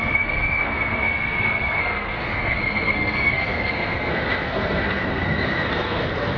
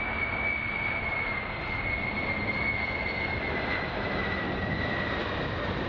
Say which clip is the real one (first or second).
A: second